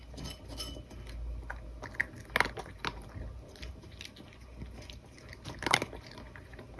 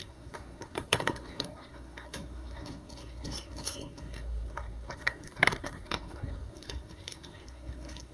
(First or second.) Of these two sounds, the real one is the first